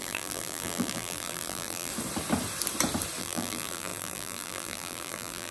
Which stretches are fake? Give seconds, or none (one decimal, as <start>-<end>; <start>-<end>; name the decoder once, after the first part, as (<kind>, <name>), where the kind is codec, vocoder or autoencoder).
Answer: 0.0-1.9 (vocoder, BigVGAN v2); 3.2-5.5